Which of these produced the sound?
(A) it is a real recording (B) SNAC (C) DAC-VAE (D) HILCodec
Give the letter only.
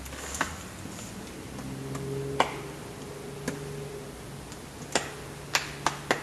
A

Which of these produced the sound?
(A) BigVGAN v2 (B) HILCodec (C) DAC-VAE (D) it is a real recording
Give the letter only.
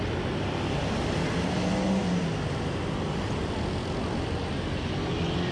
D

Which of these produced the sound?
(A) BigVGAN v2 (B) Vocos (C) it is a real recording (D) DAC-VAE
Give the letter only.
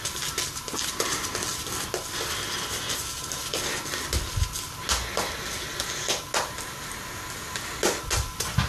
C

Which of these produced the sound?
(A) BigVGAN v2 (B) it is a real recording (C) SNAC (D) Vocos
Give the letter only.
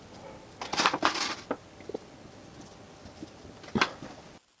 B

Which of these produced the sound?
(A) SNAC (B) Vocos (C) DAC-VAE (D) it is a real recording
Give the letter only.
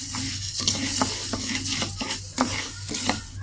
D